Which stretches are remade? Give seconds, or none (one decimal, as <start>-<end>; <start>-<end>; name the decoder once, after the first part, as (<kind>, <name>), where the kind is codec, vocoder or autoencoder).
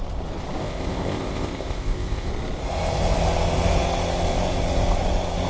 0.6-2.3 (codec, ZipCodec)